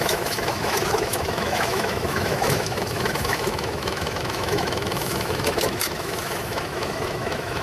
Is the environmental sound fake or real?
fake